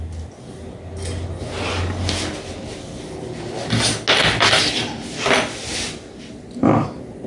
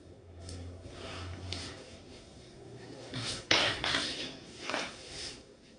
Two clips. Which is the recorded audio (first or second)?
first